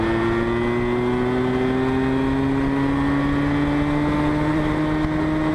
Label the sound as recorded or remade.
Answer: recorded